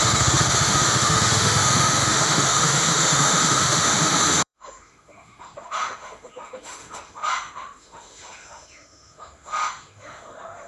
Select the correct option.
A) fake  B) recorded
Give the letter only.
A